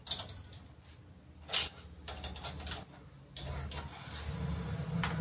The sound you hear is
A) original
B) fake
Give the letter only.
A